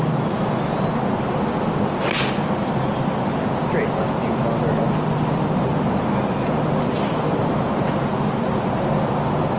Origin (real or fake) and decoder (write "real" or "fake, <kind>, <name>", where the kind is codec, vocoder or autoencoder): real